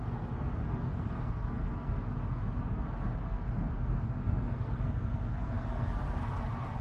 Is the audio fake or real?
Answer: fake